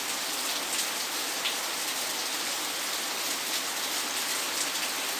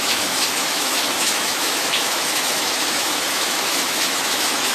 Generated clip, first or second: second